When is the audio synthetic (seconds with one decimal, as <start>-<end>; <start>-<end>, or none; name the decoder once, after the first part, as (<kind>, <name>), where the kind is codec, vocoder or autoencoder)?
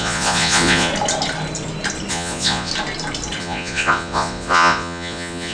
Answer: 0.0-0.9 (vocoder, Vocos); 2.1-2.7; 3.4-5.5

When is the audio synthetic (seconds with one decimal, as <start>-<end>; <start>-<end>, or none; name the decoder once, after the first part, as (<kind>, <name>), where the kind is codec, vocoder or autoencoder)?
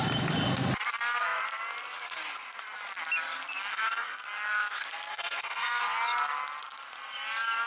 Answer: 3.7-4.2 (codec, SNAC); 5.1-5.8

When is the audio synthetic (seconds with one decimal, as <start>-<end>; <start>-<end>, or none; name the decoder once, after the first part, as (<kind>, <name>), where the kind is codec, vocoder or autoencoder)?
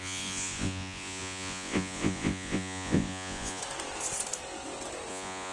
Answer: 0.0-3.6 (vocoder, Vocos); 5.1-5.5